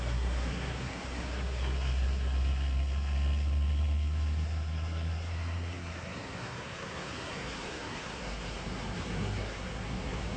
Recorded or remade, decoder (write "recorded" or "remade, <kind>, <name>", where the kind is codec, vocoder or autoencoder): remade, codec, SNAC